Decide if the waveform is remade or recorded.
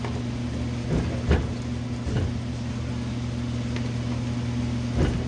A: recorded